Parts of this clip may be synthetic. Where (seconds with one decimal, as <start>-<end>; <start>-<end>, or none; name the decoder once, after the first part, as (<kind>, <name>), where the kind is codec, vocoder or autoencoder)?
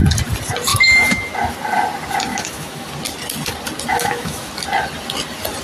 0.7-1.3 (autoencoder, DAC-VAE); 2.3-2.9; 3.9-4.5